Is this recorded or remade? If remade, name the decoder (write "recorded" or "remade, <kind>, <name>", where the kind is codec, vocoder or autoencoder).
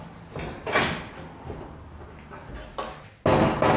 recorded